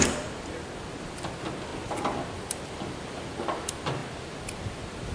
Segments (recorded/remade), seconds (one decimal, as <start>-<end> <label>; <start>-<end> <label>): 0.0-5.1 recorded